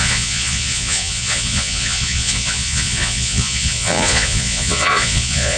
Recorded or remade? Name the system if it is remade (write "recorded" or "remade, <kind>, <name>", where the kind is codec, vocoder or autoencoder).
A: remade, vocoder, Vocos